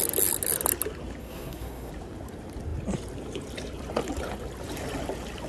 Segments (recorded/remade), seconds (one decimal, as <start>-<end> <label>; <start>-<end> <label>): 0.0-1.2 recorded; 1.2-1.9 remade; 1.9-5.5 recorded